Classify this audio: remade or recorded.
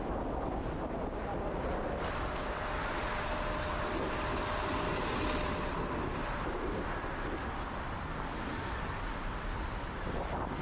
recorded